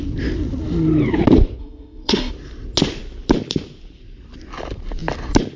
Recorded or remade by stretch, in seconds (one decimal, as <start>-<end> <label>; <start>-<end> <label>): 0.0-1.6 recorded; 1.6-2.3 remade; 2.3-5.6 recorded